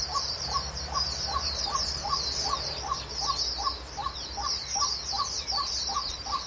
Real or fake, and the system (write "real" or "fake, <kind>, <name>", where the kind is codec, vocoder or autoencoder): fake, vocoder, BigVGAN v2